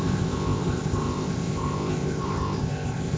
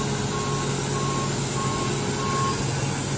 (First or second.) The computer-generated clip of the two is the first